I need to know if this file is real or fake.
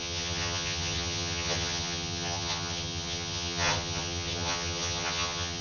fake